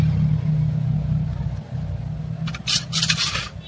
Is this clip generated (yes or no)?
no